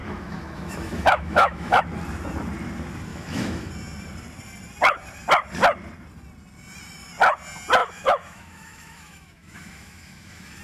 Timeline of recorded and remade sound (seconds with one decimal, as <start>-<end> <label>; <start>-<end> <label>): 0.0-1.8 remade; 1.8-3.1 recorded; 3.1-3.7 remade; 3.7-7.8 recorded; 7.8-10.6 remade